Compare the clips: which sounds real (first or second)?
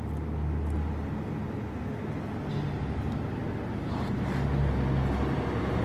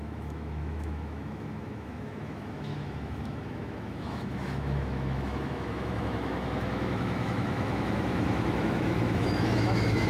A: first